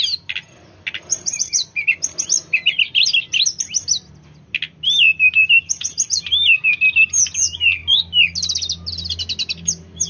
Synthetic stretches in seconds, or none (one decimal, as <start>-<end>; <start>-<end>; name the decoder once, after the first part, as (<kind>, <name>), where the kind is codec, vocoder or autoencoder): 1.1-2.2 (vocoder, BigVGAN v2); 5.1-6.2